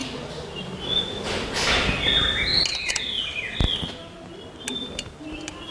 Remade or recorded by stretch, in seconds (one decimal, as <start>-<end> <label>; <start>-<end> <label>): 0.0-5.7 recorded